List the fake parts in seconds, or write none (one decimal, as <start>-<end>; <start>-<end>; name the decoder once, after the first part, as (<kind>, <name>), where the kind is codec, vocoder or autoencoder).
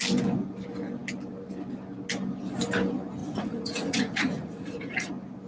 3.2-5.1 (vocoder, Vocos)